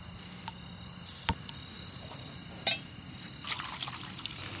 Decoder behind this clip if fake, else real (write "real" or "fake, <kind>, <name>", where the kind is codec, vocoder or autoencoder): real